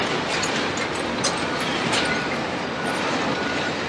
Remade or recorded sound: remade